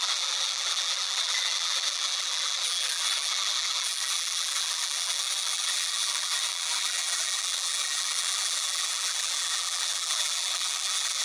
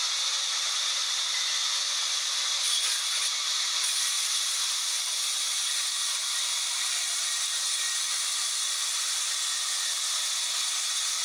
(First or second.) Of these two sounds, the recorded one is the second